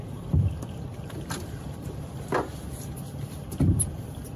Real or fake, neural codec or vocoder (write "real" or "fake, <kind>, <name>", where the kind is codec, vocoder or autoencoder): fake, vocoder, BigVGAN v2